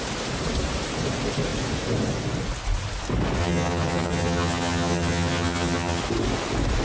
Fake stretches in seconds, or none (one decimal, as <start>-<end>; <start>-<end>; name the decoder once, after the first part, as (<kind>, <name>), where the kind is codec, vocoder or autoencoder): 3.4-6.0 (vocoder, HiFi-GAN)